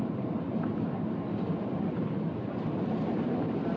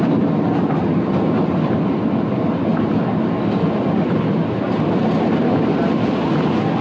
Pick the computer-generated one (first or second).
first